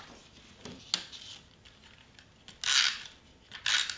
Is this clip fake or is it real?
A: real